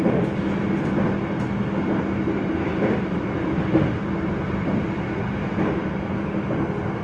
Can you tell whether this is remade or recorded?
recorded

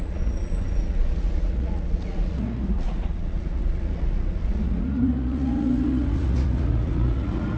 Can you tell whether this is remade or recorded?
remade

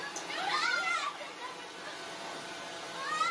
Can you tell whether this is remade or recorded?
recorded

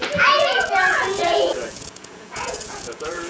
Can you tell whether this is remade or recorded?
remade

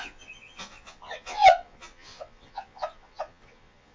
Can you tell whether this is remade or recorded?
remade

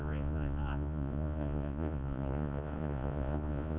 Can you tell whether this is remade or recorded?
remade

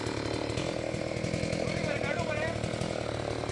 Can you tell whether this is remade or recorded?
recorded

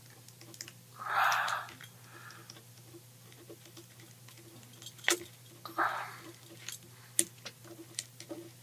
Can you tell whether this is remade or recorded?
recorded